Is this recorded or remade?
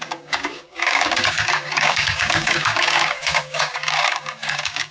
remade